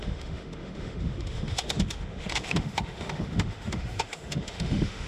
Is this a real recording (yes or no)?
no